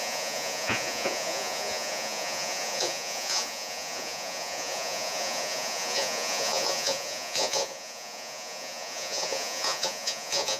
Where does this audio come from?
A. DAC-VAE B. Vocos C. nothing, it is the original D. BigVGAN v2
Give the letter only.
B